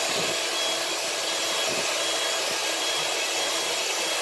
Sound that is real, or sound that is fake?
real